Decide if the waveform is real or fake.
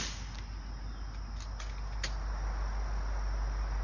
real